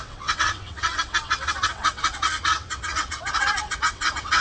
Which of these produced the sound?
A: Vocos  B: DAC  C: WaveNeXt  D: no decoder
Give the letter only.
C